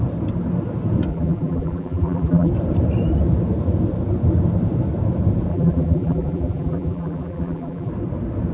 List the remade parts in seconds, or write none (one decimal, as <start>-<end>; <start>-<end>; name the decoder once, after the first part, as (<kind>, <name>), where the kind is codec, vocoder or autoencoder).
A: 1.1-2.5 (vocoder, BigVGAN v2); 5.5-7.9